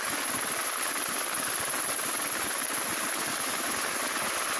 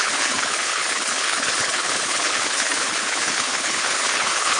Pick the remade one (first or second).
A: second